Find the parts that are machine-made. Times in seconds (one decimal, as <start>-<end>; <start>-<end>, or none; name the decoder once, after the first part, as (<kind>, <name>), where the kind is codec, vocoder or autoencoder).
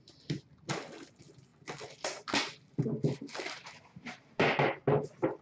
none